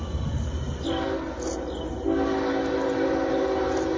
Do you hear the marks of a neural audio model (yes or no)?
no